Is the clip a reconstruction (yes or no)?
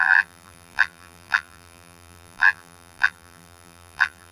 yes